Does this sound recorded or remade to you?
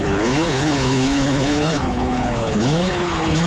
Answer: remade